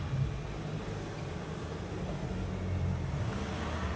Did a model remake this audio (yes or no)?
no